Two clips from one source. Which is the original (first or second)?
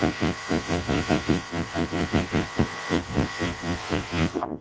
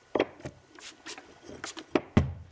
second